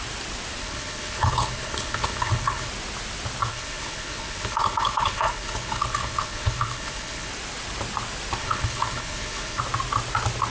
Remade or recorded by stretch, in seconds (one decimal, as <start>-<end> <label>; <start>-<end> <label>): 0.0-0.6 recorded; 0.6-2.7 remade; 2.7-3.5 recorded; 3.5-7.3 remade; 7.3-8.4 recorded; 8.4-9.6 remade; 9.6-10.5 recorded